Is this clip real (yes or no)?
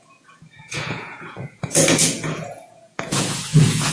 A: no